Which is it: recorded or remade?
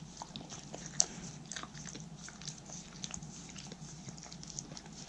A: remade